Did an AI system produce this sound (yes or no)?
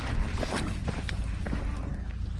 no